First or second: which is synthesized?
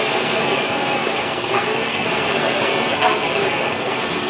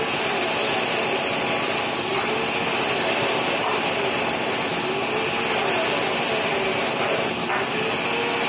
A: first